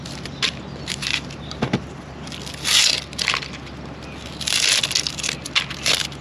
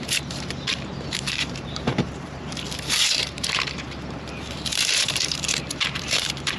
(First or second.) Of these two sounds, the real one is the first